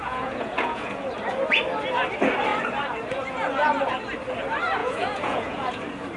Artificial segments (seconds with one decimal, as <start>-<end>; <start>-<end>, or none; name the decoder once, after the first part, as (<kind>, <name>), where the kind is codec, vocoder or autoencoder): 0.0-1.0 (vocoder, Vocos); 4.8-5.8